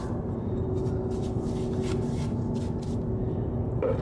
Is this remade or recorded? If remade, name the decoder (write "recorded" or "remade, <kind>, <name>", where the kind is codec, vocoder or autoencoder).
recorded